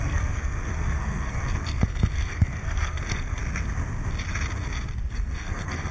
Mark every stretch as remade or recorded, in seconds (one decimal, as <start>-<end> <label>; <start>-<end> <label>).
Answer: 0.0-3.4 remade; 3.4-5.1 recorded; 5.1-5.9 remade